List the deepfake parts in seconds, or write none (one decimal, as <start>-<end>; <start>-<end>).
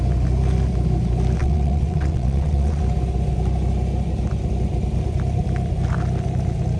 1.4-2.8